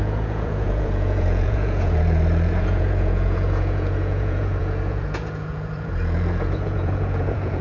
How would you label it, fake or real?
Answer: fake